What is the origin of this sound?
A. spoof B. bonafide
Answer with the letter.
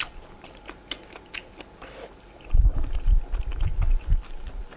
B